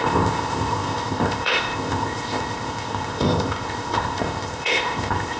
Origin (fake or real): fake